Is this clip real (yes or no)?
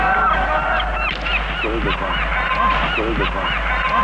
yes